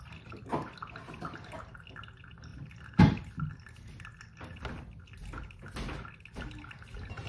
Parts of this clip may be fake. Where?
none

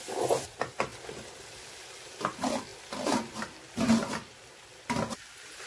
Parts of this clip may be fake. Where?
none

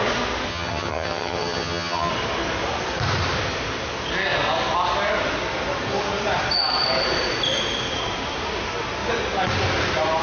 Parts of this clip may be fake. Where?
0.5-2.1 (vocoder, HiFi-GAN)

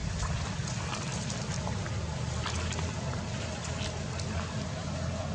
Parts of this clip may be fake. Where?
none

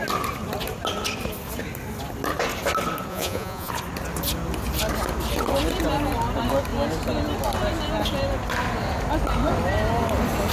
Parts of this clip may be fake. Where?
3.1-3.7 (vocoder, Vocos)

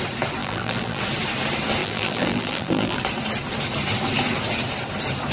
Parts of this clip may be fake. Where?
0.4-1.0 (vocoder, BigVGAN v2); 1.8-3.0

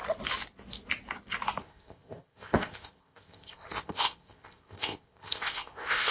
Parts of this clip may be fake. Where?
1.6-6.1 (codec, ZipCodec)